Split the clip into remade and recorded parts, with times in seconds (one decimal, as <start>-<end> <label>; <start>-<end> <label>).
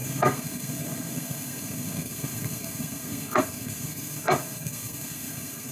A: 0.0-5.7 remade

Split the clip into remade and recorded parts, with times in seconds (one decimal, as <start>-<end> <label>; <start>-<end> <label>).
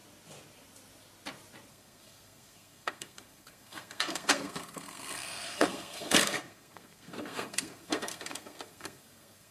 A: 0.0-1.7 recorded; 1.7-9.5 remade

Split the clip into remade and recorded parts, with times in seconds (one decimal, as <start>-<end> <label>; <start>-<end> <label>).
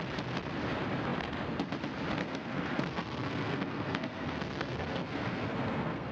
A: 0.0-2.2 recorded; 2.2-6.1 remade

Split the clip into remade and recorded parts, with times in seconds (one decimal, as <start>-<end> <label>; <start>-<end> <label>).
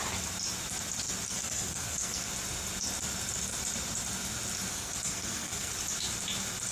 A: 0.0-1.3 recorded; 1.3-2.3 remade; 2.3-4.7 recorded; 4.7-5.7 remade; 5.7-6.7 recorded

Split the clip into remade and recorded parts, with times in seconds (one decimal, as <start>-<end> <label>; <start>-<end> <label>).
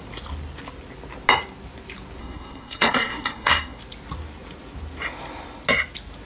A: 0.0-2.2 recorded; 2.2-3.8 remade; 3.8-6.3 recorded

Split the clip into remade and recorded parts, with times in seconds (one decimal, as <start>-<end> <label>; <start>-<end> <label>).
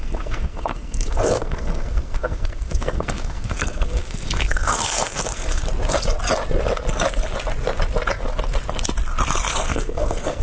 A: 0.0-5.6 remade; 5.6-9.5 recorded; 9.5-10.4 remade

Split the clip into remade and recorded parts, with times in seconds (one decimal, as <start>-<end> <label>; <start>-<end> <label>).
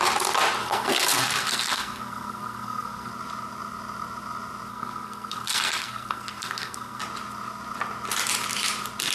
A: 0.0-0.6 recorded; 0.6-3.1 remade; 3.1-4.7 recorded; 4.7-7.0 remade; 7.0-9.1 recorded